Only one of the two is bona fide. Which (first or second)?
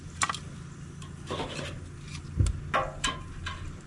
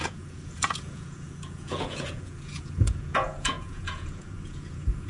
first